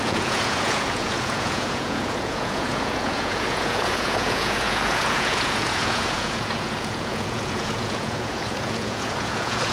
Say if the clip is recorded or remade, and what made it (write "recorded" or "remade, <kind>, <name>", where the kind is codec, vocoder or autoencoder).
remade, vocoder, Vocos